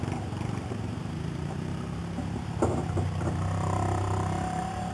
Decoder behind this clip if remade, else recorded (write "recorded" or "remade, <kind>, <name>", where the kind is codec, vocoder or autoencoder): remade, vocoder, BigVGAN v2